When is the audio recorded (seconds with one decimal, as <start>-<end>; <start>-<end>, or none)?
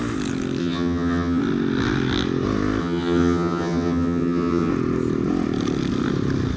0.0-0.6; 1.4-2.8; 4.7-6.6